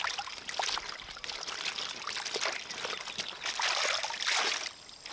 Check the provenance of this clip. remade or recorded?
recorded